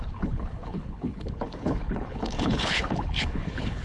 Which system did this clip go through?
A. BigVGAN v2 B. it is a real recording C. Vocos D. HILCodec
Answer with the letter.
D